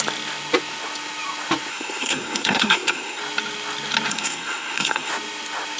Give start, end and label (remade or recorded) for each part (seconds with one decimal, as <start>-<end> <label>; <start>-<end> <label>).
0.0-1.7 recorded; 1.7-3.2 remade; 3.2-4.1 recorded; 4.1-5.1 remade; 5.1-5.8 recorded